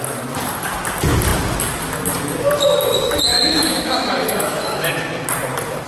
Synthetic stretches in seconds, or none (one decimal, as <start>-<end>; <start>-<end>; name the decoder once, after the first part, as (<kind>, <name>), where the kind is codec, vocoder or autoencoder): 3.3-4.9 (autoencoder, DAC-VAE)